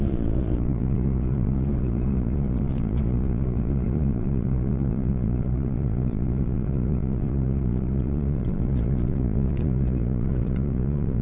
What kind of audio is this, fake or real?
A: fake